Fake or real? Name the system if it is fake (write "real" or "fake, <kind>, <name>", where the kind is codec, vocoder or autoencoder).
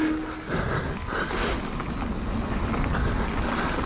real